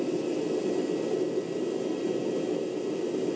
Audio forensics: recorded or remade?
recorded